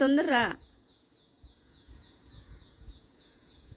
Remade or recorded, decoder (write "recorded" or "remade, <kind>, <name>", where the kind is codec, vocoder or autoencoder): remade, vocoder, Vocos